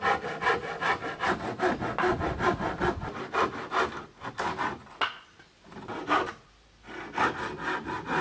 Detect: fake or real real